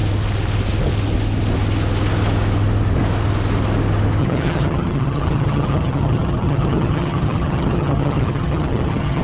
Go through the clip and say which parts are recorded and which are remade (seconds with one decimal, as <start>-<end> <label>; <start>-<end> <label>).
0.0-4.2 recorded; 4.2-9.2 remade